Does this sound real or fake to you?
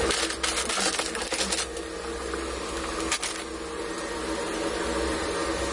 real